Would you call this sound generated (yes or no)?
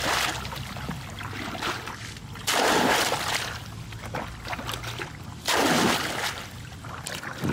no